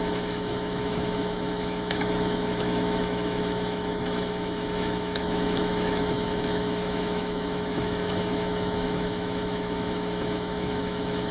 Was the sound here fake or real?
fake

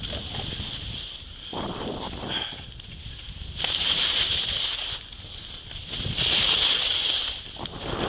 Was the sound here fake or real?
real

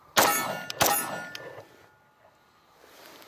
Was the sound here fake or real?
real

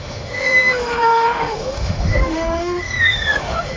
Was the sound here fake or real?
fake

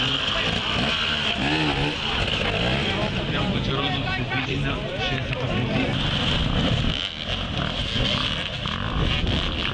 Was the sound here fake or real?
real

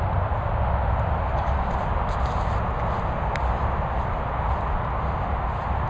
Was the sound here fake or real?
real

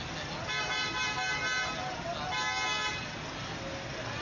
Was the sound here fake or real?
real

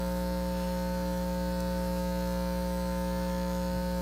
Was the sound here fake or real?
fake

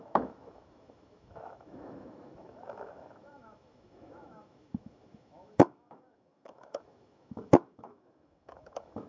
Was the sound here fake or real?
fake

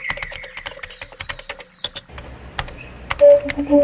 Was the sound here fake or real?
real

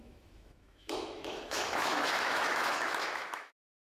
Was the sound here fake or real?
fake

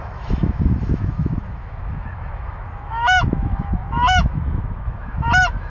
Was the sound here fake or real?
fake